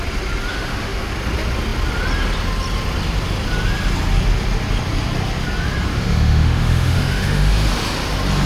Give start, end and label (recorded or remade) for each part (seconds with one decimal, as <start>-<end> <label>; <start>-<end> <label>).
0.0-0.5 recorded; 0.5-1.1 remade; 1.1-5.9 recorded; 5.9-7.7 remade; 7.7-8.5 recorded